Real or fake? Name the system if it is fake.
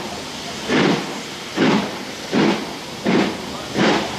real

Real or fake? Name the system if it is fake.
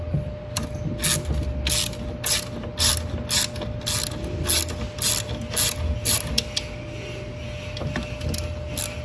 real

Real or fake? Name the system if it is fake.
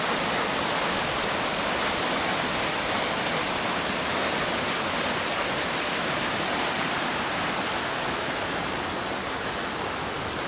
real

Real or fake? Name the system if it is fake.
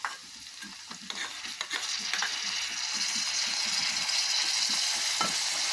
real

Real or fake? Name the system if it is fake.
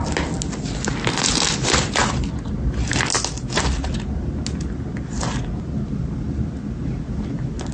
real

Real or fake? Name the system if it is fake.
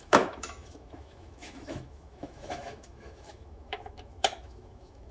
fake, autoencoder, DAC-VAE